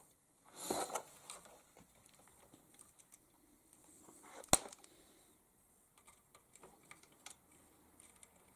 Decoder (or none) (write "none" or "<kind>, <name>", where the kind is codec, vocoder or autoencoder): none